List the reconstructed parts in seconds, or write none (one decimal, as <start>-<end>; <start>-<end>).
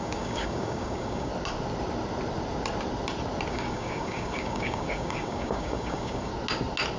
0.0-1.3; 3.5-6.3